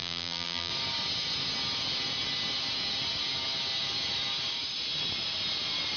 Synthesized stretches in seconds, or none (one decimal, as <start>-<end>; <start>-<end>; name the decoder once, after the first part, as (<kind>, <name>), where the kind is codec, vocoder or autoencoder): 0.0-0.7 (vocoder, BigVGAN v2)